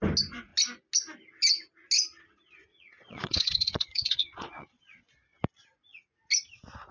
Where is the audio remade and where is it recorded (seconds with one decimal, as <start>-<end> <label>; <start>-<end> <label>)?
0.0-2.7 recorded; 2.7-5.4 remade; 5.4-6.9 recorded